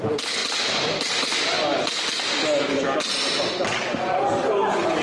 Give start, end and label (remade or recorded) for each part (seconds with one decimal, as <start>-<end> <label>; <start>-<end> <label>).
0.0-5.0 recorded